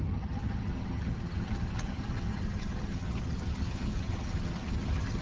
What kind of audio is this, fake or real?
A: fake